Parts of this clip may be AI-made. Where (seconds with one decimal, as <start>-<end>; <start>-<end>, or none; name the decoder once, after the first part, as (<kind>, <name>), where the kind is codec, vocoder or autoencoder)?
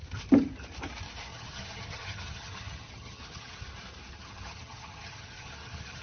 1.3-3.6 (vocoder, HiFi-GAN); 4.1-6.0